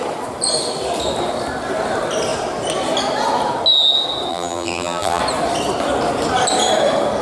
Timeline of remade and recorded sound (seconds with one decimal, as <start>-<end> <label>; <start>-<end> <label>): 0.0-4.3 recorded; 4.3-5.2 remade; 5.2-7.2 recorded